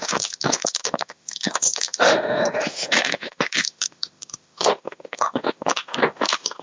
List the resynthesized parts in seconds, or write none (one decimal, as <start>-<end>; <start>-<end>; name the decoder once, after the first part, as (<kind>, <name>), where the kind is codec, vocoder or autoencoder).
0.0-6.6 (autoencoder, DAC-VAE)